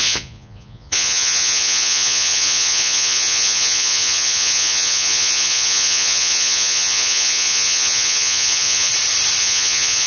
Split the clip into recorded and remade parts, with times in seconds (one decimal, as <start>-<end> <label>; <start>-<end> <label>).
0.0-8.9 remade; 8.9-9.4 recorded; 9.4-10.1 remade